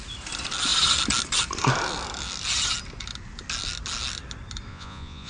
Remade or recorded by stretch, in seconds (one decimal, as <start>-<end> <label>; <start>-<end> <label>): 0.0-4.7 recorded; 4.7-5.3 remade